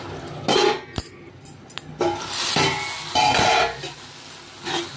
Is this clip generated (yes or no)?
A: no